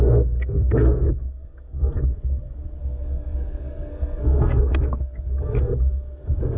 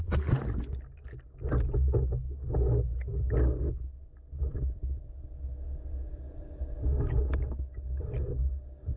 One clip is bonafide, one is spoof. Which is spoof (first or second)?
first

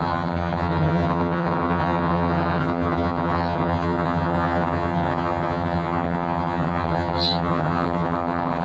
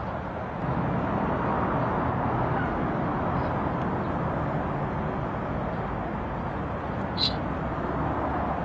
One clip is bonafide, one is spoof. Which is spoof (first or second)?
first